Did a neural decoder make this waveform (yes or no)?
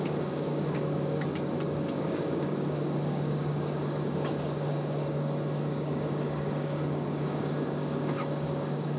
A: yes